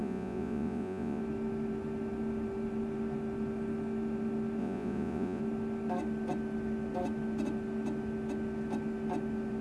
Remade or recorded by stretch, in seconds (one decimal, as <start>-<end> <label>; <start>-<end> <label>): 0.0-1.2 remade; 1.2-4.6 recorded; 4.6-5.4 remade; 5.4-9.6 recorded